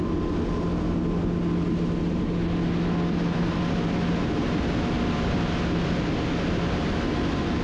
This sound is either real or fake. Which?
real